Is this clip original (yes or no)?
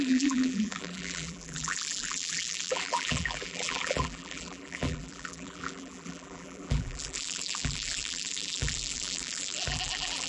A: no